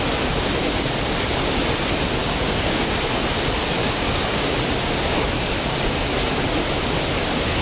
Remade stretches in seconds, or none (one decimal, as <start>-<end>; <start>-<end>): 2.2-3.2; 3.8-4.5